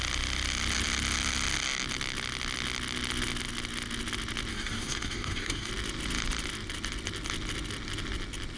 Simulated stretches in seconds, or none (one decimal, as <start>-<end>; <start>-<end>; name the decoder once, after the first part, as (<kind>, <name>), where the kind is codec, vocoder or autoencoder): 4.5-5.7 (codec, DAC)